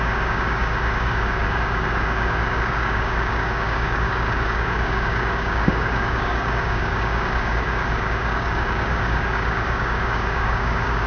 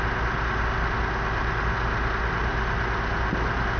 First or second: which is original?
second